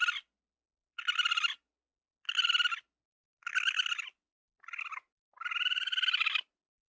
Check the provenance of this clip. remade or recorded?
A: recorded